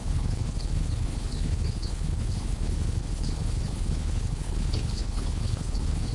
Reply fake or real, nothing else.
fake